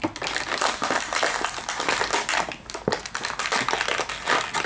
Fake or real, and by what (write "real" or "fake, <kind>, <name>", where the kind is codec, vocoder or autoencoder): real